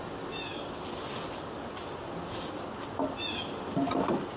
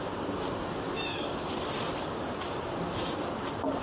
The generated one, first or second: second